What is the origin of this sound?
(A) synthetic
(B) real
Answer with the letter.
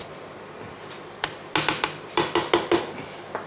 B